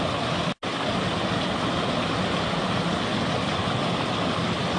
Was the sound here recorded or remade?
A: recorded